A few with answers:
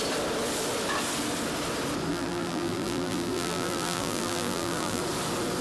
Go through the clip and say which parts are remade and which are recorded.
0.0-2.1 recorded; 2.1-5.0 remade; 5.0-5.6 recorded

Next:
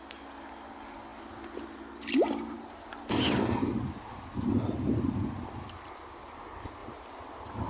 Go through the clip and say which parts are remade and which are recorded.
0.0-6.8 recorded; 6.8-7.7 remade

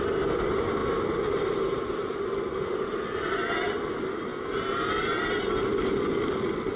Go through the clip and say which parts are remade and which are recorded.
0.0-6.8 recorded